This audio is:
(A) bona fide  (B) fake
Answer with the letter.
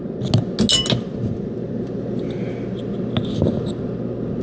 A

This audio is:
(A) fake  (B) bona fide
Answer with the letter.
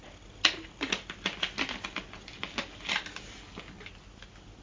B